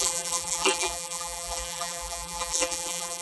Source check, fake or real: fake